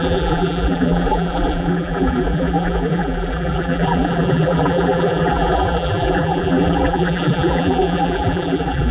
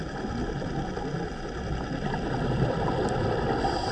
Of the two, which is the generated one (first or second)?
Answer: first